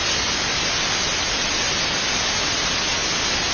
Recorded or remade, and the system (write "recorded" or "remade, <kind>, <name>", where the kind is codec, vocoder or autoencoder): recorded